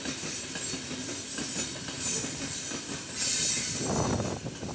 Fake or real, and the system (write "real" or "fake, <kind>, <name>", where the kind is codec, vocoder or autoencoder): real